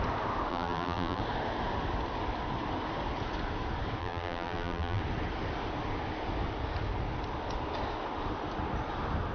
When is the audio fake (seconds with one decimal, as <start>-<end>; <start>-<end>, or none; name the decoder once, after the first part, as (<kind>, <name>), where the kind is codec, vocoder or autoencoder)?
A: 0.5-1.2 (vocoder, BigVGAN v2); 4.0-5.0